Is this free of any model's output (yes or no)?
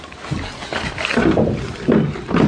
yes